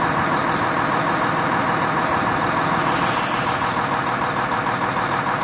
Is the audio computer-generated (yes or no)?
no